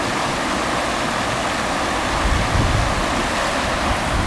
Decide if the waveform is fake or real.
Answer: real